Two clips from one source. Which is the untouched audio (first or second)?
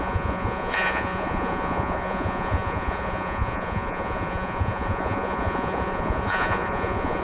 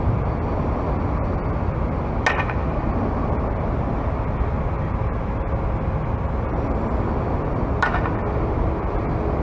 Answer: second